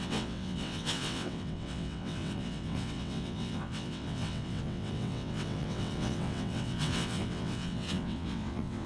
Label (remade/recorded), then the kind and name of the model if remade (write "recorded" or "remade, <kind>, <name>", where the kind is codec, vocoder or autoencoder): remade, vocoder, WaveNeXt